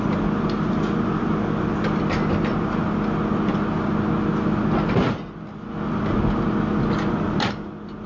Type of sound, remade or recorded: recorded